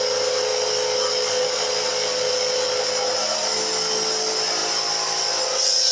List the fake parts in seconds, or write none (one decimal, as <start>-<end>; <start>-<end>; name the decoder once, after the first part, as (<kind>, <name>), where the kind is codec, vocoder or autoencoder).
none